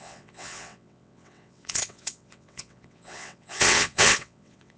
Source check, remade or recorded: remade